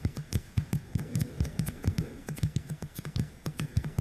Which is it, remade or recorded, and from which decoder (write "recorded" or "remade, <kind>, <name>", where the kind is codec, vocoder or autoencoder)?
remade, codec, SNAC